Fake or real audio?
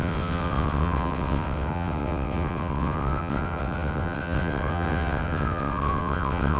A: fake